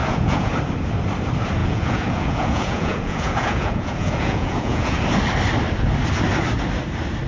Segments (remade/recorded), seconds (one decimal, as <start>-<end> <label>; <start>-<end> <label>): 0.0-0.5 remade; 0.5-1.6 recorded; 1.6-5.0 remade; 5.0-7.3 recorded